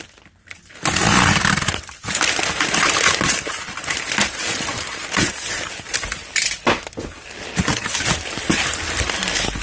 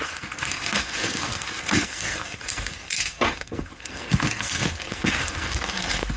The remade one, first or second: second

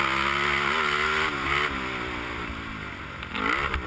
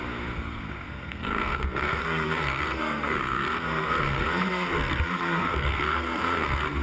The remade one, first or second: second